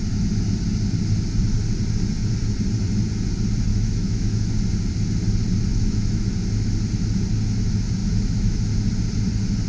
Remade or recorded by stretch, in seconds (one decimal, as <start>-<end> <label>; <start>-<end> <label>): 0.0-3.7 recorded; 3.7-4.5 remade; 4.5-5.7 recorded; 5.7-6.3 remade; 6.3-8.0 recorded; 8.0-8.6 remade; 8.6-9.7 recorded